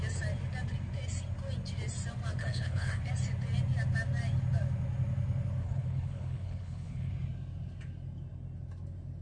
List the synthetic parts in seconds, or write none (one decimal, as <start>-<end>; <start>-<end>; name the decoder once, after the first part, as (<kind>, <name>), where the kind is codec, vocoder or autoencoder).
2.4-3.0 (codec, HILCodec); 5.6-7.1